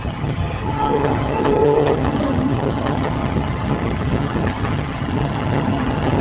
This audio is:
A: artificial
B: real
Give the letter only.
A